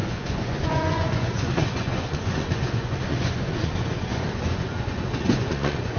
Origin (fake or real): fake